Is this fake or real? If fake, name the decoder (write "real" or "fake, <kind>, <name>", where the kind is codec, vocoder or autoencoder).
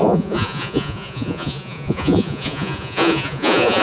fake, vocoder, Vocos